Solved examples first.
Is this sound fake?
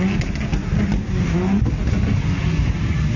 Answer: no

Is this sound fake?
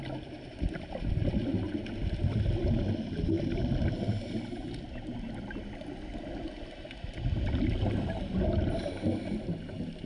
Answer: no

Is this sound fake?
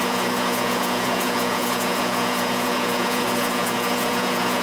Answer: yes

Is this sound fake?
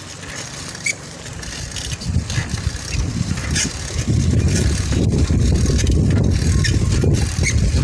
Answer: no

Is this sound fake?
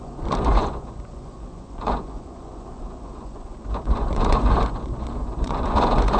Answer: yes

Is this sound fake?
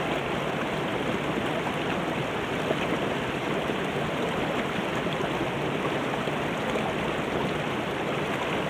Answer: no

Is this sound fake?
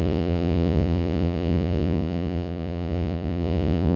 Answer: yes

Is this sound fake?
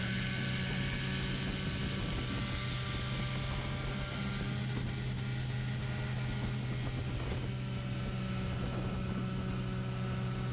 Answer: no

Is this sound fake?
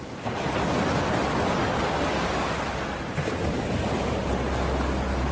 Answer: no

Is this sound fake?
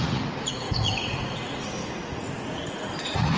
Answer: yes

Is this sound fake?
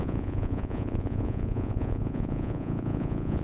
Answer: yes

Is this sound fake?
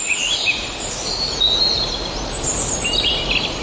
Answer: no